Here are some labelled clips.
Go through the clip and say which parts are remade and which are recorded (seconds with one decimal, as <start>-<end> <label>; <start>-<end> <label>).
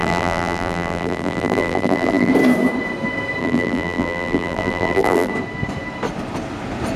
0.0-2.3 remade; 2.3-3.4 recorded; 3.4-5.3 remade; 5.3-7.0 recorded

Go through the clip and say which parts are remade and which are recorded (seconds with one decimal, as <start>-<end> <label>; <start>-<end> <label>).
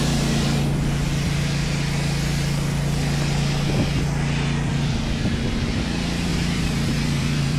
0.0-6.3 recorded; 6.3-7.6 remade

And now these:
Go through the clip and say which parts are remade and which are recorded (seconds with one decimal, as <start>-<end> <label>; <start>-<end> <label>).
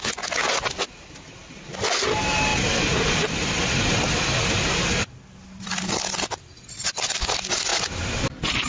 0.0-8.7 recorded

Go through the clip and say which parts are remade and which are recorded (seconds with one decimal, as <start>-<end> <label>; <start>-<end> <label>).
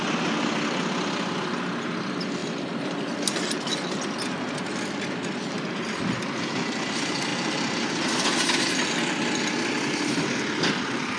0.0-2.4 recorded; 2.4-3.1 remade; 3.1-7.3 recorded; 7.3-8.2 remade; 8.2-11.2 recorded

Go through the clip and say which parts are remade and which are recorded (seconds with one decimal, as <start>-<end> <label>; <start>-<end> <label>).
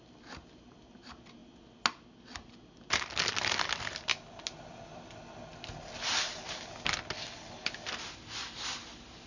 0.0-9.3 recorded